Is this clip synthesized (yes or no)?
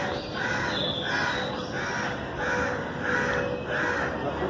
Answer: no